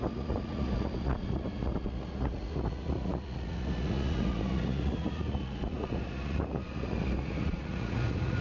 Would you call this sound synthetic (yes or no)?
yes